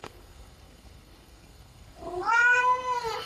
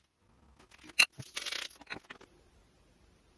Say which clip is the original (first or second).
second